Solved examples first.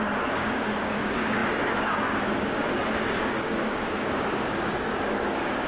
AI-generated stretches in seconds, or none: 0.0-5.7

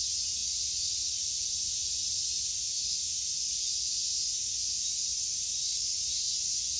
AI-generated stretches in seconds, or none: 5.1-5.8

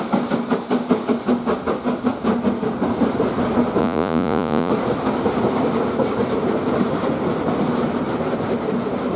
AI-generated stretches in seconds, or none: 3.8-4.7